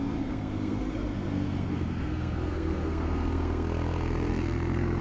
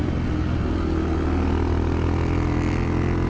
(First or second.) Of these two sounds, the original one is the second